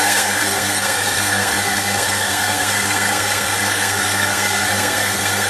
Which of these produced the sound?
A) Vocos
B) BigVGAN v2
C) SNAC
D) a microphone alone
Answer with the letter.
C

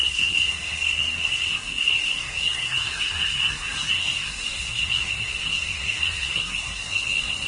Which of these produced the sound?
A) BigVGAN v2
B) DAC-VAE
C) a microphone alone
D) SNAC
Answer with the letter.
D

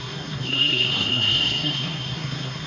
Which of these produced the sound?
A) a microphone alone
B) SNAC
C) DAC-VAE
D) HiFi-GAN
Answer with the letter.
B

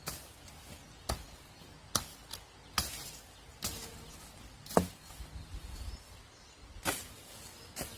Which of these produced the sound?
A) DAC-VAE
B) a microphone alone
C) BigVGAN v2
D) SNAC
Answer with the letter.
B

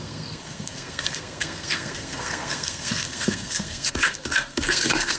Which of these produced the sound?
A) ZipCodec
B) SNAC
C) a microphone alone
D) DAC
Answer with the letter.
B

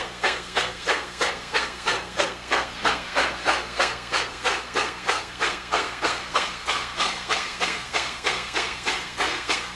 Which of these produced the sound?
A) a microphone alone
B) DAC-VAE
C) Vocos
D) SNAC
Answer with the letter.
D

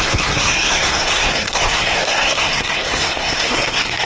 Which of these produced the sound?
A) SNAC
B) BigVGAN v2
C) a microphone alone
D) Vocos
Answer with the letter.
A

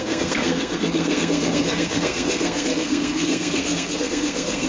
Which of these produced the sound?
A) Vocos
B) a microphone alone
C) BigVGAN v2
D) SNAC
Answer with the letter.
D